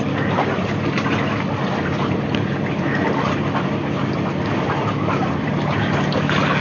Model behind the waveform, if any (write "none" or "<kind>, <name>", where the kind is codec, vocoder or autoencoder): none